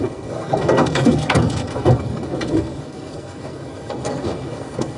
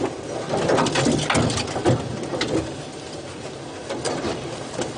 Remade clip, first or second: first